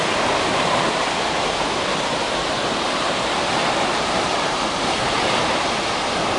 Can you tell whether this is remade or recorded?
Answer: remade